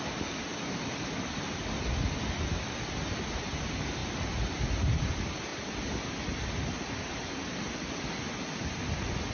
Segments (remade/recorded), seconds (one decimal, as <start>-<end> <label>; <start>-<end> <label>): 0.0-9.3 recorded